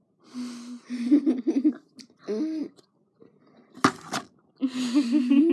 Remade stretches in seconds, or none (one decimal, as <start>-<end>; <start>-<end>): 2.6-3.2